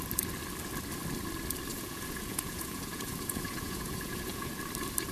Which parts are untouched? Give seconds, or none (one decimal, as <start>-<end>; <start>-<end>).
0.0-1.7; 4.5-5.1